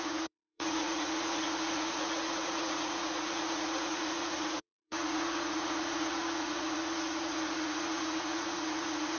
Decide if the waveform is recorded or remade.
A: remade